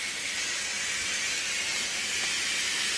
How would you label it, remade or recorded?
recorded